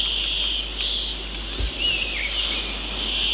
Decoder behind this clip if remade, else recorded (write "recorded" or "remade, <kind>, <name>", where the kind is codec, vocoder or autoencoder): recorded